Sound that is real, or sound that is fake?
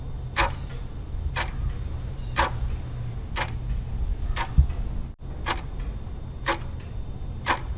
real